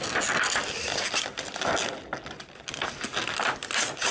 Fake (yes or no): no